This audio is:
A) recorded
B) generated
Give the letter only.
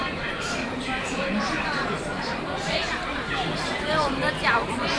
B